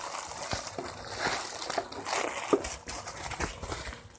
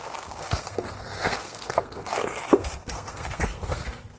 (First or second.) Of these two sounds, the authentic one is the first